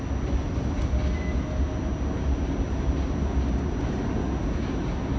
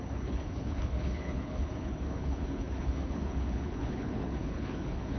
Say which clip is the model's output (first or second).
second